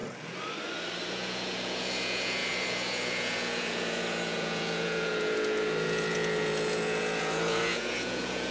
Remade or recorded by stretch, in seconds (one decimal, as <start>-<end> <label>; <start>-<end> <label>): 0.0-1.1 recorded; 1.1-8.5 remade